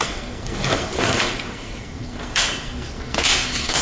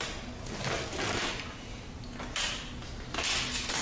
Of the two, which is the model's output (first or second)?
first